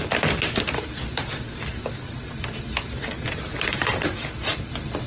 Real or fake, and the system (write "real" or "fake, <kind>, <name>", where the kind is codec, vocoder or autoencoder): real